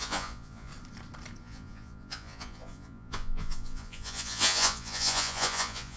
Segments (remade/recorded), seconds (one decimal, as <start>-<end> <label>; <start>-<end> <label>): 0.0-0.7 remade; 0.7-1.4 recorded; 1.4-6.0 remade